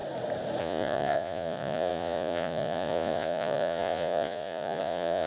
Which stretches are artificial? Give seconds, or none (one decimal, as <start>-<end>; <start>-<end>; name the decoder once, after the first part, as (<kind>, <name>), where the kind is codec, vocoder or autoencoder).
0.6-5.3 (vocoder, Vocos)